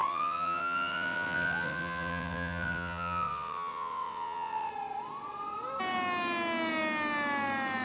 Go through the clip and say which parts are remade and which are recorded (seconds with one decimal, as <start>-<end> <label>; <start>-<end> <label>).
0.0-4.7 remade; 4.7-7.8 recorded